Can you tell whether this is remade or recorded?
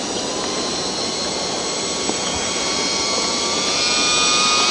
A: remade